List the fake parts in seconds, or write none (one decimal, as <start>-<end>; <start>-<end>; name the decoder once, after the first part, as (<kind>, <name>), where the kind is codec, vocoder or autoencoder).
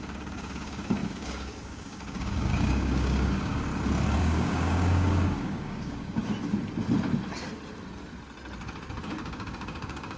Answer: 0.0-3.7 (codec, DAC); 4.2-6.2; 9.0-10.2